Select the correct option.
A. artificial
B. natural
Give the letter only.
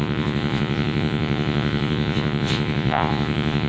A